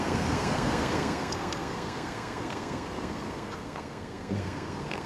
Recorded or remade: remade